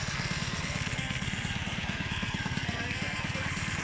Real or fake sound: fake